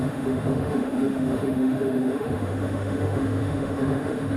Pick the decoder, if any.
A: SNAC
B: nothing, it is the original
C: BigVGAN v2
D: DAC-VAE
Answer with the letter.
D